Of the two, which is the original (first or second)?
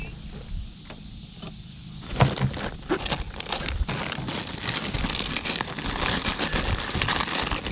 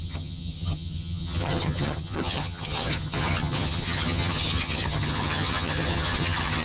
first